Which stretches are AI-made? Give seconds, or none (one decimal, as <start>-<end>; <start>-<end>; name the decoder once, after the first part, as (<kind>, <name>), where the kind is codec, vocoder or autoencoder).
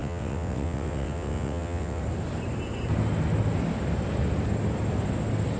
0.0-2.0 (vocoder, WaveNeXt)